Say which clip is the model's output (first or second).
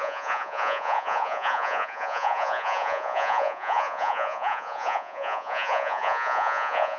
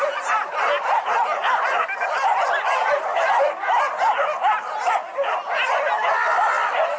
first